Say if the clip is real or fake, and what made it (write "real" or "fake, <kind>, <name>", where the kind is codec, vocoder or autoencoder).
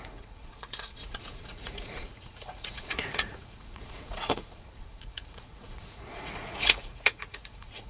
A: fake, vocoder, Vocos